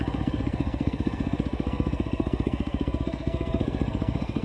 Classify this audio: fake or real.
fake